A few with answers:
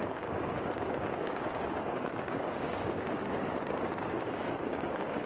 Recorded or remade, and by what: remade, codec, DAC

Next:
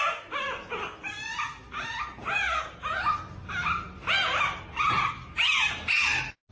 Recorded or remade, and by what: recorded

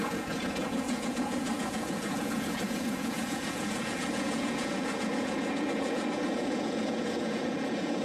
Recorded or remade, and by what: remade, vocoder, Vocos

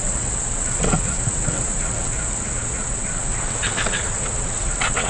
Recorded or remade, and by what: remade, vocoder, WaveNeXt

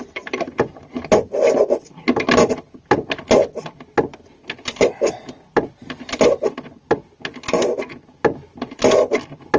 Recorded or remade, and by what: recorded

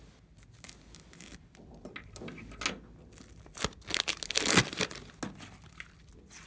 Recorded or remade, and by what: recorded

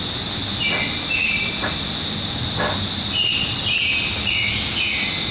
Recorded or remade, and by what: recorded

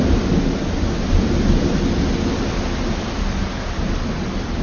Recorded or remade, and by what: recorded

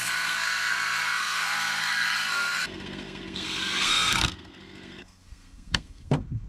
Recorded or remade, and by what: remade, codec, SNAC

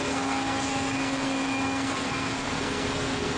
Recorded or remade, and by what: remade, codec, SNAC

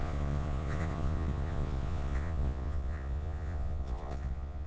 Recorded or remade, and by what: remade, vocoder, Vocos